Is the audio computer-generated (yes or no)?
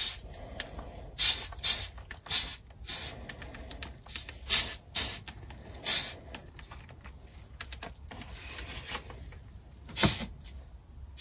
no